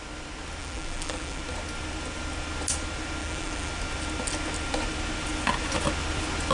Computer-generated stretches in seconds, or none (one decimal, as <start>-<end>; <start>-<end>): 0.6-1.4; 3.2-3.7